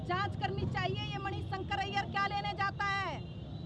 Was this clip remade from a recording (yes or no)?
no